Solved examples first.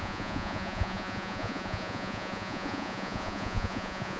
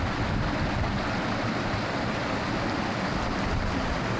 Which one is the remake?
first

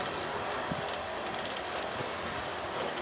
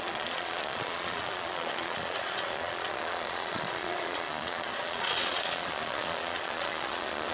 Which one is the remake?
second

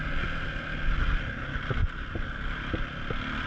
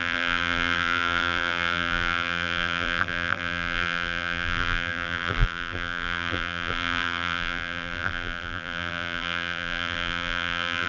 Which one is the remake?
second